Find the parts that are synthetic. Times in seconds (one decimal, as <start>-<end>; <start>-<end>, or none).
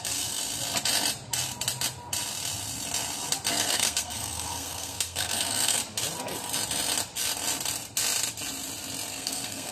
0.0-0.4; 3.5-5.8; 9.1-9.7